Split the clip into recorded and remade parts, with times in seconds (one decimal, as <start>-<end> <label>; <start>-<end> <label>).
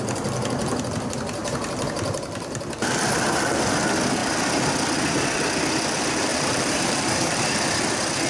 0.0-6.3 recorded; 6.3-7.4 remade; 7.4-8.3 recorded